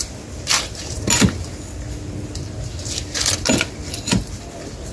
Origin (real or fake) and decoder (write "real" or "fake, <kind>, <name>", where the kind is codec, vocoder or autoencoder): real